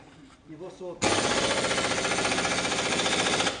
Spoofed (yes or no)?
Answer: no